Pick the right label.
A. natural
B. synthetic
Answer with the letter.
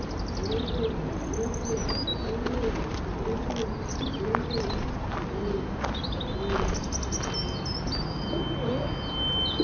A